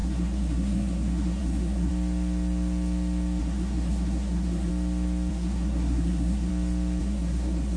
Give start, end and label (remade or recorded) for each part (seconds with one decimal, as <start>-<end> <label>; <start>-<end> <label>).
0.0-1.9 remade; 1.9-3.4 recorded; 3.4-4.7 remade; 4.7-5.3 recorded; 5.3-6.5 remade; 6.5-7.0 recorded; 7.0-7.8 remade